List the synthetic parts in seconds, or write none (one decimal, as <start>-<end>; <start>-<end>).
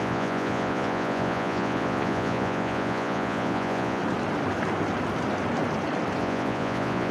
0.0-4.0; 6.2-7.1